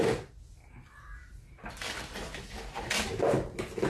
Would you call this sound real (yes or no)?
yes